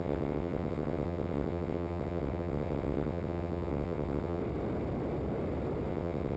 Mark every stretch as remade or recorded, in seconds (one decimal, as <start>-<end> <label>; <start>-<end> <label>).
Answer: 0.0-4.4 remade; 4.4-5.9 recorded; 5.9-6.4 remade